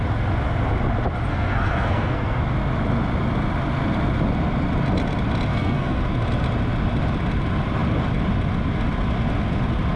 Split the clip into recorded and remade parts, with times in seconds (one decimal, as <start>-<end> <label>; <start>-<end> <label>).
0.0-1.3 recorded; 1.3-2.4 remade; 2.4-5.5 recorded; 5.5-6.0 remade; 6.0-10.0 recorded

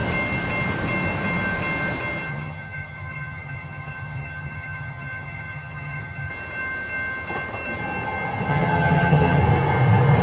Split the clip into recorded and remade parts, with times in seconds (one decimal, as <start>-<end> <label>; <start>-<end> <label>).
0.0-2.3 recorded; 2.3-6.3 remade; 6.3-8.5 recorded; 8.5-9.4 remade; 9.4-10.2 recorded

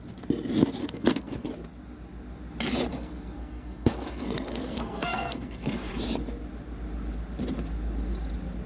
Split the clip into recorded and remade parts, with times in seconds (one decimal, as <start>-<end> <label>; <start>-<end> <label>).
0.0-0.8 recorded; 0.8-1.5 remade; 1.5-2.9 recorded; 2.9-5.9 remade; 5.9-8.7 recorded